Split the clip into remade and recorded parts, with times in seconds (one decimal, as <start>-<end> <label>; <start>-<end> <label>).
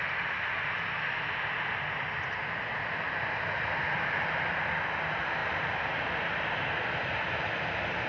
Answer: 0.0-5.4 recorded; 5.4-6.0 remade; 6.0-8.1 recorded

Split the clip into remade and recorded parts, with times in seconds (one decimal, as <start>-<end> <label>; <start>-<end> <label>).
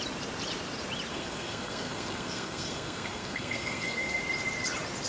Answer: 0.0-1.1 recorded; 1.1-4.2 remade; 4.2-5.1 recorded